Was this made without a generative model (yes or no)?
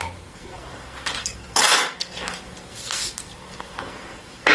no